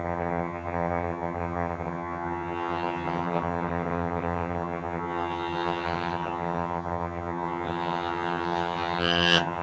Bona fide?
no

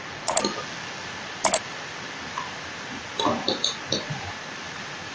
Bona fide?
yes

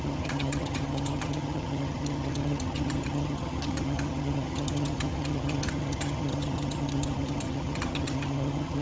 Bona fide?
no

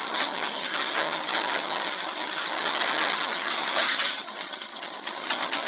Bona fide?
no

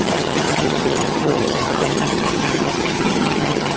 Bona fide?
no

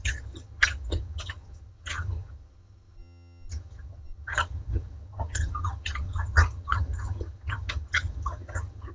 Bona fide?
no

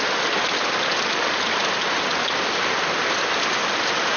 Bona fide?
yes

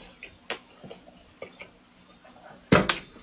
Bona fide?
yes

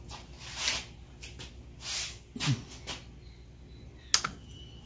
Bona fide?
yes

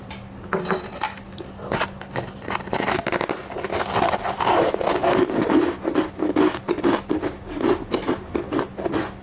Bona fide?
yes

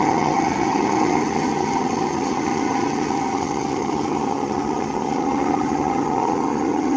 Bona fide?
no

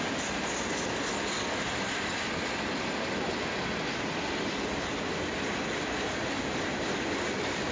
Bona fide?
yes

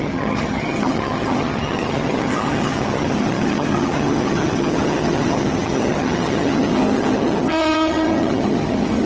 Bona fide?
no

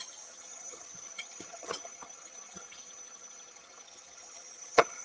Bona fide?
no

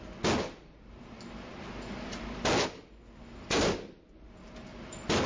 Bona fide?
yes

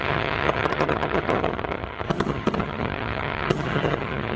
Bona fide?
no